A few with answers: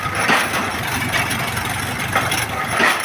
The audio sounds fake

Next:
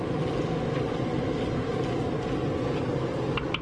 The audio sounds real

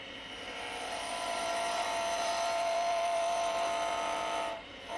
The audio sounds fake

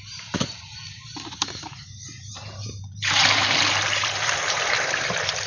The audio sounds fake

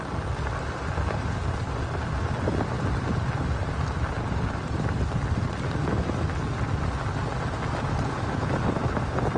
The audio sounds real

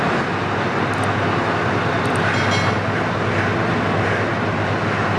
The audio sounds real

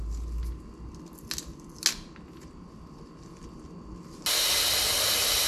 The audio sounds real